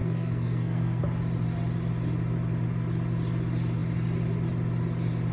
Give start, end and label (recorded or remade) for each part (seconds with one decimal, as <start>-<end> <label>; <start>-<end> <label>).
0.0-1.0 remade; 1.0-5.3 recorded